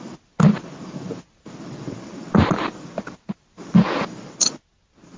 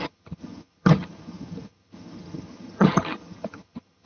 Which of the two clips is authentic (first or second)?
first